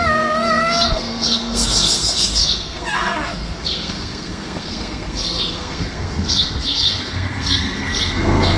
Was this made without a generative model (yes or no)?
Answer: no